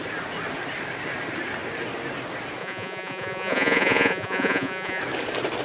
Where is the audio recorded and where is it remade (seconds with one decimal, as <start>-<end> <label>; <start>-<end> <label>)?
0.0-2.6 recorded; 2.6-5.0 remade; 5.0-5.6 recorded